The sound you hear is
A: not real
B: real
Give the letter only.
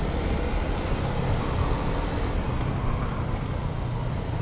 B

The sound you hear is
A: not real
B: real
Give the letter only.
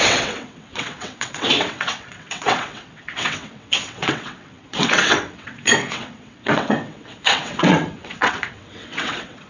A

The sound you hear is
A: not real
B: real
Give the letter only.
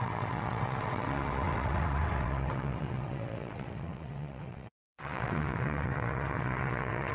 A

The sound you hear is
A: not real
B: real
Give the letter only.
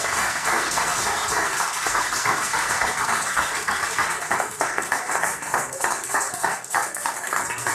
A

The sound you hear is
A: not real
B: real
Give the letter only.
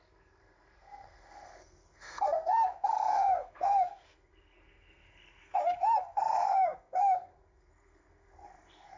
A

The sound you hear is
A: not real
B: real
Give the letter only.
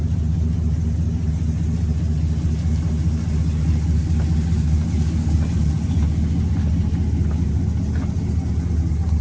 B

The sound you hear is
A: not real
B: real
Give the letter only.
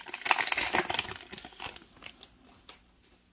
B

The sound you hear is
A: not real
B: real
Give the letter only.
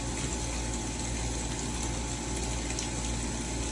B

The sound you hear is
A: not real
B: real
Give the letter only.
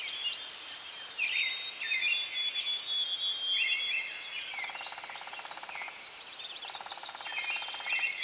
B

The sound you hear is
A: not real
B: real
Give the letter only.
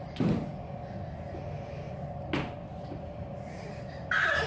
B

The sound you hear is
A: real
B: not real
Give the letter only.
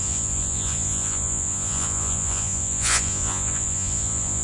B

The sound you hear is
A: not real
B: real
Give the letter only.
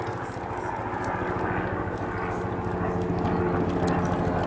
B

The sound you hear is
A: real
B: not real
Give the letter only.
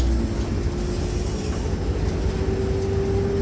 A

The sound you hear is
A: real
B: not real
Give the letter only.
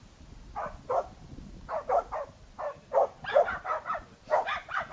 A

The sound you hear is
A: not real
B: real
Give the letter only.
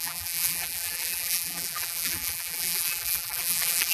A